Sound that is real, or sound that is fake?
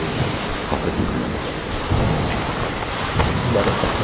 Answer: real